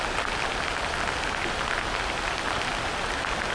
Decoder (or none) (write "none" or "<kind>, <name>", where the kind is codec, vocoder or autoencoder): none